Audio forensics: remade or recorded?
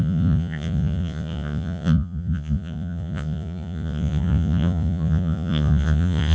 remade